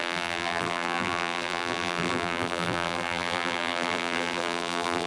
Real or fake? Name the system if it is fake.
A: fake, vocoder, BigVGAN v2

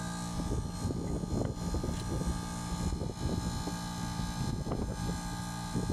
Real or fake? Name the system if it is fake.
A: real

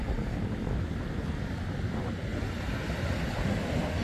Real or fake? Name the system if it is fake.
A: real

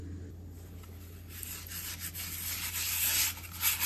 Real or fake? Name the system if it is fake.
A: real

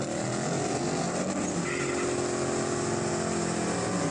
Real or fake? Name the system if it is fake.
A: real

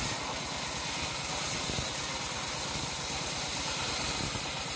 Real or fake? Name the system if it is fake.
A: real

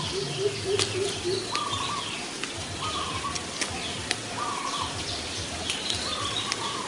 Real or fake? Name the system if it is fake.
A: real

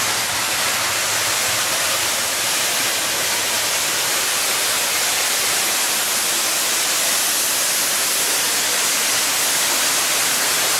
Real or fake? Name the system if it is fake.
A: real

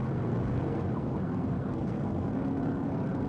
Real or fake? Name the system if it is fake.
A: fake, codec, SNAC